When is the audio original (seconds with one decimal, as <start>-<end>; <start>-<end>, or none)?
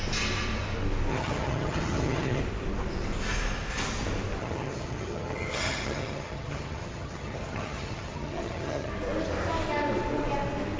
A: 0.0-1.1; 2.4-4.4; 8.9-10.8